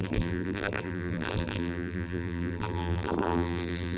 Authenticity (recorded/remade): remade